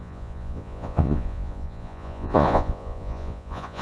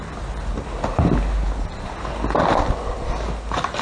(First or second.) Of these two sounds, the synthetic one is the first